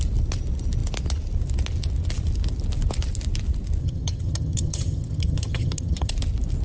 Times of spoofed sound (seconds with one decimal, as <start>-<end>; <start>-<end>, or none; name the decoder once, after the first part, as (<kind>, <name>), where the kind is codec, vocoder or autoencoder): 3.8-6.1 (vocoder, HiFi-GAN)